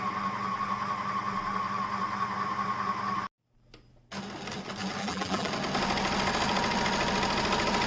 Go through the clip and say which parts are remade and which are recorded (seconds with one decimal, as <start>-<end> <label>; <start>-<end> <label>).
0.0-5.0 recorded; 5.0-5.5 remade; 5.5-7.9 recorded